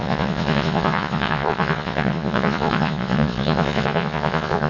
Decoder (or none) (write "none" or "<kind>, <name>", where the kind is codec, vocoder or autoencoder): vocoder, Vocos